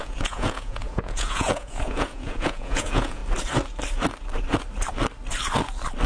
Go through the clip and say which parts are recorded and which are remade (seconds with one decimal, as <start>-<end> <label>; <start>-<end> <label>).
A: 0.0-3.2 remade; 3.2-6.1 recorded